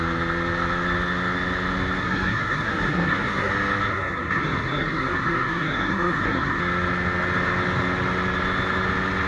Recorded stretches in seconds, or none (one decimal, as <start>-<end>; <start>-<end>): 0.0-2.0; 3.5-3.9; 6.6-9.3